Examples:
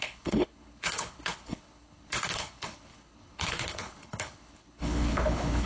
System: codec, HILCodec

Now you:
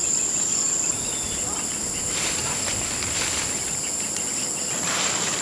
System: none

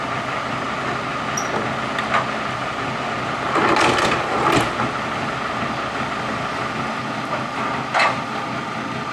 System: none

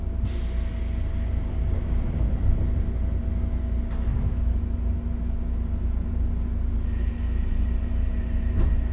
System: none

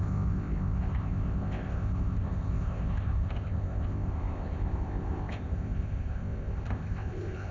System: codec, ZipCodec